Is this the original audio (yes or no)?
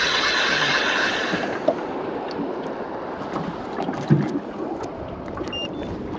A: yes